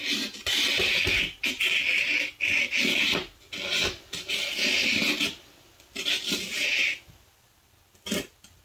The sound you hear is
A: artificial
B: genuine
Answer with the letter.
B